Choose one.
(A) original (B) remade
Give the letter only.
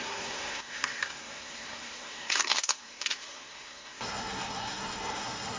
B